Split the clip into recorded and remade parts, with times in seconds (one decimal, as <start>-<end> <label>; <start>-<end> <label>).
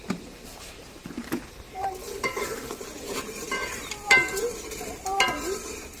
0.0-2.0 remade; 2.0-3.0 recorded; 3.0-6.0 remade